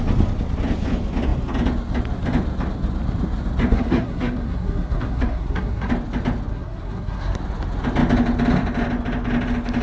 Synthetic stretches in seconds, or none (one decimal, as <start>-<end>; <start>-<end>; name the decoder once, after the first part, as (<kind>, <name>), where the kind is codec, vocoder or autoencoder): 3.7-5.9 (codec, SNAC); 6.5-7.4